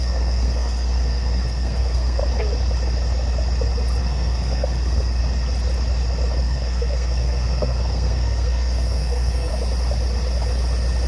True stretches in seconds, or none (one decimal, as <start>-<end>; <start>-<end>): 2.2-4.0; 5.2-6.4; 9.5-11.1